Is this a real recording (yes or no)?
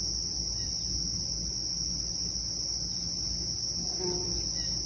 yes